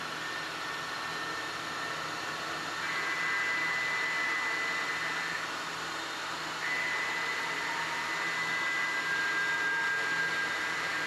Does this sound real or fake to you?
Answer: real